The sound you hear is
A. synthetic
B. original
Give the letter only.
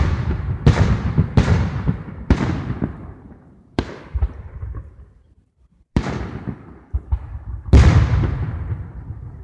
A